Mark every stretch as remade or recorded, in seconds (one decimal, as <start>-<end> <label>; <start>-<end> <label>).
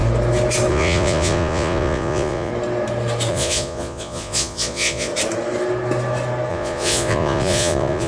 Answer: 0.0-0.7 recorded; 0.7-2.5 remade; 2.5-3.3 recorded; 3.3-5.1 remade; 5.1-6.5 recorded; 6.5-8.1 remade